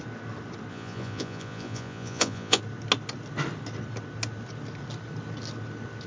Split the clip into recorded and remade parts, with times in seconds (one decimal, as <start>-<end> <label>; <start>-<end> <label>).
0.0-0.7 recorded; 0.7-2.6 remade; 2.6-6.1 recorded